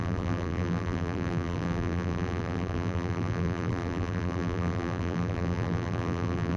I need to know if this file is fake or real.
fake